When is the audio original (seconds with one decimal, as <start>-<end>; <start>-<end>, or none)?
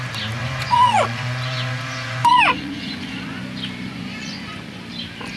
0.0-0.4; 3.4-3.9; 4.8-5.4